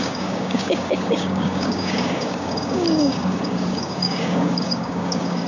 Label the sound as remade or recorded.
remade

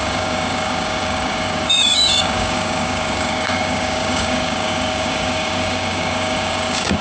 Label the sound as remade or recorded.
remade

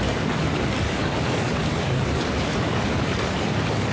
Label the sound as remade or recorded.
remade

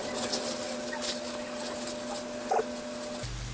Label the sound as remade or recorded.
recorded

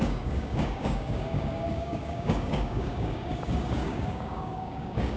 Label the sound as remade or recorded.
remade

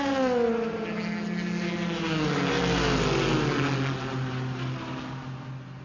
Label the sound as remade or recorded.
recorded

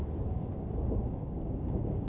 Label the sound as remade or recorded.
remade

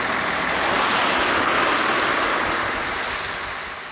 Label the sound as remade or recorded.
recorded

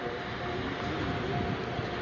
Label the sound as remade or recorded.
recorded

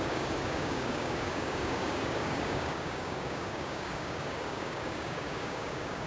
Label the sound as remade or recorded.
remade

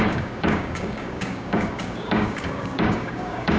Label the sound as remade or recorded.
remade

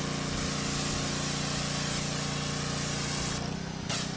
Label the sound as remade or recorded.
recorded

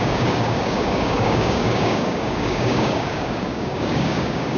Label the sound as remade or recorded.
remade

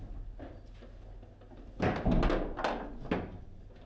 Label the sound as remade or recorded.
recorded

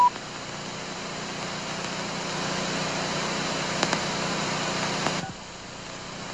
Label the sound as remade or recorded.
recorded